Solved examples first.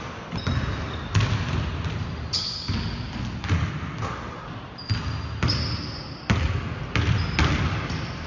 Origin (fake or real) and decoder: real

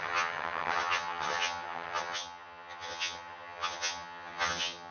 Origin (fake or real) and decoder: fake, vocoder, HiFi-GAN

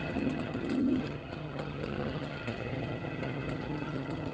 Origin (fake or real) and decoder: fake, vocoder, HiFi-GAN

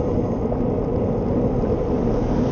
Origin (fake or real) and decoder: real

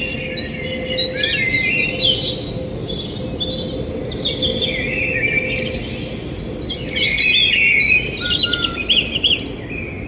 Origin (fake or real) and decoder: real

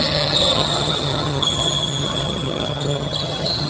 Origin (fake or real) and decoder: fake, vocoder, HiFi-GAN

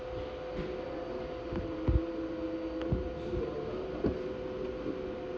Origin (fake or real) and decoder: real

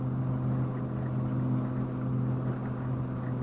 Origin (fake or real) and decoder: real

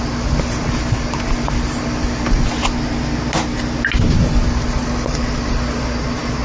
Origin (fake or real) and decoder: real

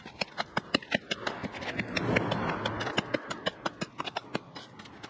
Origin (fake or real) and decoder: real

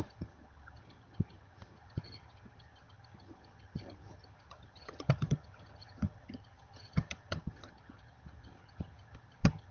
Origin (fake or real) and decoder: fake, vocoder, HiFi-GAN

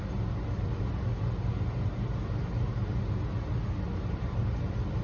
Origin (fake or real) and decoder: real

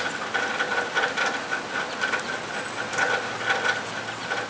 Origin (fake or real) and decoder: real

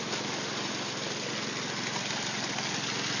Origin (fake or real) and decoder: real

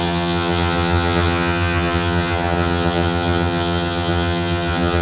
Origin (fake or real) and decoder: fake, vocoder, HiFi-GAN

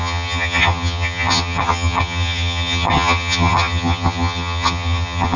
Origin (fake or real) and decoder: fake, vocoder, HiFi-GAN